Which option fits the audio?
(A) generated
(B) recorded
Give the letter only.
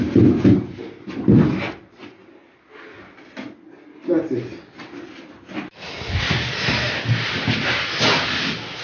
B